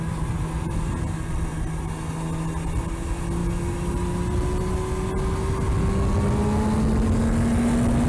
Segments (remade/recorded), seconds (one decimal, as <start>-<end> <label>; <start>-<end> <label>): 0.0-8.1 recorded